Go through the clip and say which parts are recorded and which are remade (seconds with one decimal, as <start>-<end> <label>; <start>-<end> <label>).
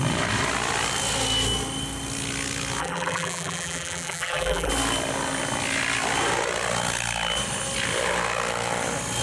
0.0-2.8 recorded; 2.8-4.7 remade; 4.7-9.2 recorded